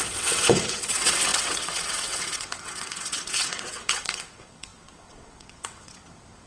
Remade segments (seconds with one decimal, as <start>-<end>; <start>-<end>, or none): 0.0-6.5